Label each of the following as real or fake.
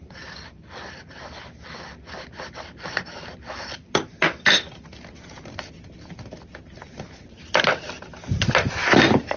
real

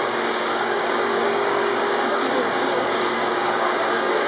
fake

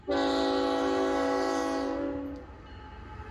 real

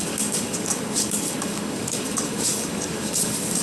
fake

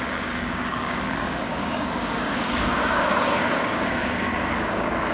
fake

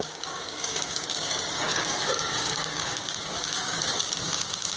fake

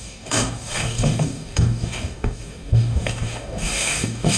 fake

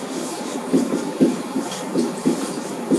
fake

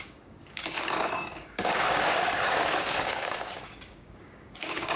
fake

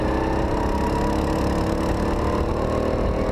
real